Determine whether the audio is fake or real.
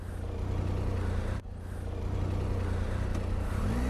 real